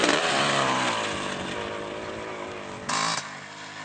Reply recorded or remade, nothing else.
recorded